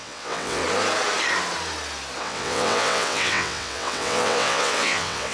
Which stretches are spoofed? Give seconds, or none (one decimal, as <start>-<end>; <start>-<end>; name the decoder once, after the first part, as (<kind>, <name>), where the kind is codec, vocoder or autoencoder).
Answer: 0.0-0.6 (vocoder, WaveNeXt); 2.2-5.3